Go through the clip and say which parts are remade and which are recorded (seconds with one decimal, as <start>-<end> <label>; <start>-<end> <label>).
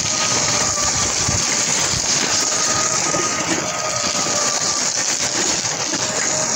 0.0-1.7 recorded; 1.7-3.6 remade; 3.6-6.6 recorded